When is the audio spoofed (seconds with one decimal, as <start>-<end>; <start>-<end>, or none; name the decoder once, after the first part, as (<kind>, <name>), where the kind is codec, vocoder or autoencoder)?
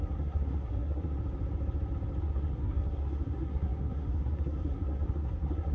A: 0.0-1.1 (codec, SNAC); 2.2-5.7